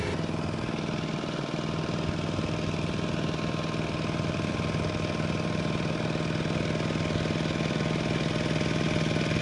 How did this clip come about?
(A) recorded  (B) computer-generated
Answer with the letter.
A